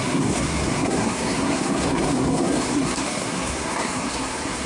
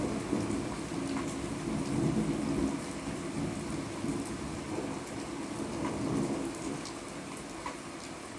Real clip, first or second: second